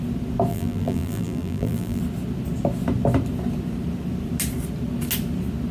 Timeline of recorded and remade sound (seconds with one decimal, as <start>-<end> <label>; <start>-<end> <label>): 0.0-0.5 recorded; 0.5-2.0 remade; 2.0-5.7 recorded